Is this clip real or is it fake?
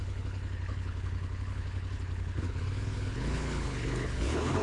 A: fake